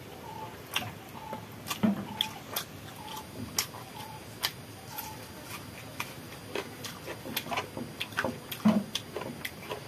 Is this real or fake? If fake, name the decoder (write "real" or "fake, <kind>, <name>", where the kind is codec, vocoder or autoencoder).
real